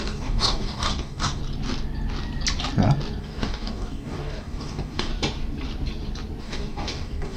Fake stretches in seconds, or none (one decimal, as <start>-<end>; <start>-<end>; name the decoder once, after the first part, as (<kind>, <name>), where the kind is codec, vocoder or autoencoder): 0.0-1.4 (codec, DAC); 3.2-5.1; 6.4-7.4